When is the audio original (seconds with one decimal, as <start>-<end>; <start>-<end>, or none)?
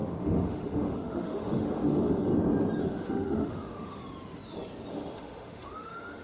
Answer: 2.3-2.8; 4.0-4.9